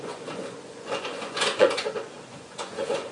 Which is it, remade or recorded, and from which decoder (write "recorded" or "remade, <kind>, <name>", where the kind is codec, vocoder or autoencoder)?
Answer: remade, vocoder, Vocos